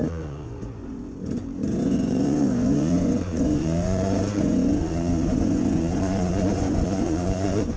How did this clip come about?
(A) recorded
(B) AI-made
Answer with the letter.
B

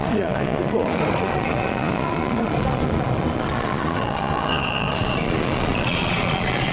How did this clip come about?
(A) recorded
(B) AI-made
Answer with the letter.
B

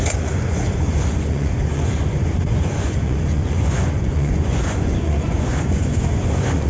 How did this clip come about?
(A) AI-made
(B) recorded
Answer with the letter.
A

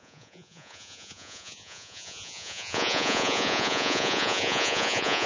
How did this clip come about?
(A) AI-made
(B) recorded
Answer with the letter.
A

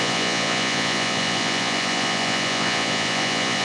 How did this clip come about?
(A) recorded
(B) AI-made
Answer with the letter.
B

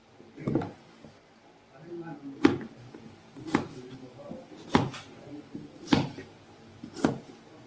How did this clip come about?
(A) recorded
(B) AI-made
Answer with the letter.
A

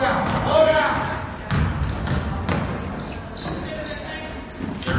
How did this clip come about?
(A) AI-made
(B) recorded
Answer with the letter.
B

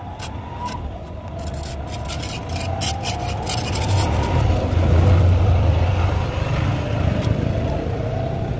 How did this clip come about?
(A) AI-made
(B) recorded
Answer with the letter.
B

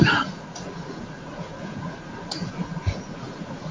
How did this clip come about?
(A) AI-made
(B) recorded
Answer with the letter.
A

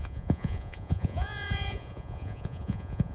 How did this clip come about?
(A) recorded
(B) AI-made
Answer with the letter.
B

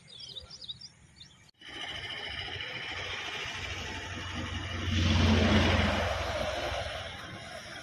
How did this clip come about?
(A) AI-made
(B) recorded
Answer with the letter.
B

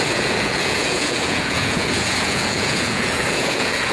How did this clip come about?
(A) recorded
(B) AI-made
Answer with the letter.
B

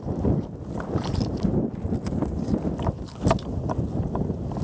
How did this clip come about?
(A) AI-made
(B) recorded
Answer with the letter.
B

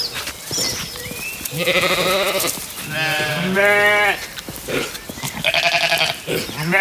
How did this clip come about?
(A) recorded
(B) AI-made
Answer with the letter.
A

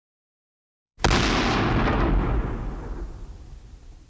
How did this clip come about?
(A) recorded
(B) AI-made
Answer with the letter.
A